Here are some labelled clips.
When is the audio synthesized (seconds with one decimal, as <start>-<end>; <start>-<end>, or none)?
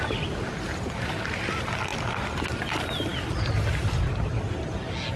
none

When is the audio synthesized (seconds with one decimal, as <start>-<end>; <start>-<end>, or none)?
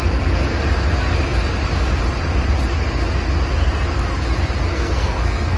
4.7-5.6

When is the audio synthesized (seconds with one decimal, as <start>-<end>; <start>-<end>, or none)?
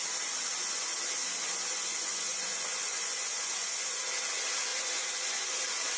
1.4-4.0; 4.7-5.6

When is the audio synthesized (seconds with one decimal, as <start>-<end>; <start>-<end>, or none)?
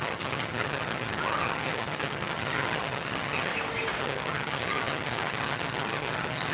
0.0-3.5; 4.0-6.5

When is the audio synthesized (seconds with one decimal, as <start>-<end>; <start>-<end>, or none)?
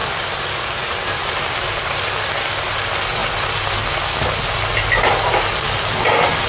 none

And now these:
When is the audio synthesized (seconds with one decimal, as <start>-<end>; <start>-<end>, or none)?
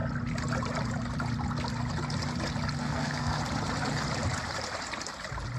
2.8-3.4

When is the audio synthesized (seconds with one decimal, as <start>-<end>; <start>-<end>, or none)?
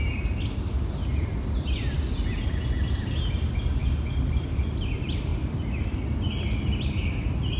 none